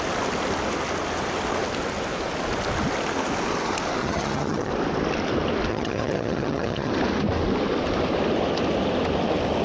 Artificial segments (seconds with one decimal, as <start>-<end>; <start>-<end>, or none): 4.0-4.7; 5.7-6.9